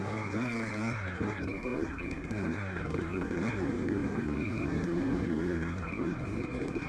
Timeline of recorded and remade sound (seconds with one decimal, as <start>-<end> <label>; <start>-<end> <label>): 0.0-6.9 remade